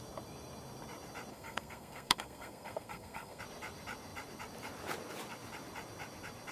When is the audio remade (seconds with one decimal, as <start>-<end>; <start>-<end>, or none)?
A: 1.3-3.4